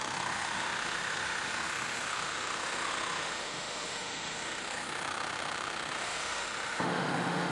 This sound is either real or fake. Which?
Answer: fake